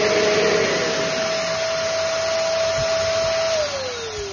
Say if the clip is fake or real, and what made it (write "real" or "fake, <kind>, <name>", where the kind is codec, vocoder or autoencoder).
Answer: real